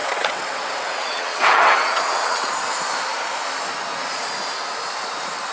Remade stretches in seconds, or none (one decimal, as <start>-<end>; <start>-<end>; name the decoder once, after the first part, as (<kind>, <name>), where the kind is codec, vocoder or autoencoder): 0.0-2.5 (vocoder, WaveNeXt)